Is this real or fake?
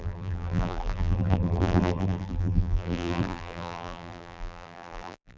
fake